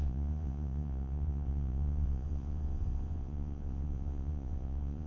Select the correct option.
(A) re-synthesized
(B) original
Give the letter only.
A